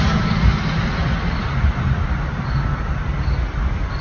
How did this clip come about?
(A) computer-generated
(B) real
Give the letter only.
B